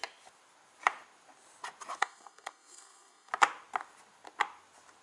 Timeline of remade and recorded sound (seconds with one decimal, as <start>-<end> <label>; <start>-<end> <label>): 0.0-2.0 recorded; 2.0-3.3 remade; 3.3-5.0 recorded